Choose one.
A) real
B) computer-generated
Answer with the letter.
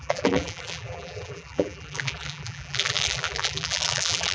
B